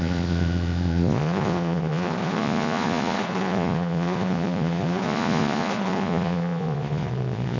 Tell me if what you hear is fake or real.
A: fake